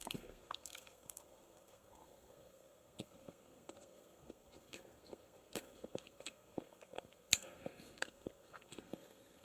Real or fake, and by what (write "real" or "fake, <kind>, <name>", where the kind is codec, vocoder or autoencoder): fake, codec, SNAC